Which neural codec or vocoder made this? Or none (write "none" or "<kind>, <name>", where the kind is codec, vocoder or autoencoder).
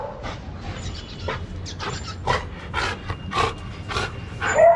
none